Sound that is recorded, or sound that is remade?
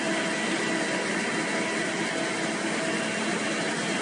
recorded